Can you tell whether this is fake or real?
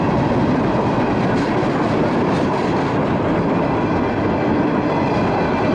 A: real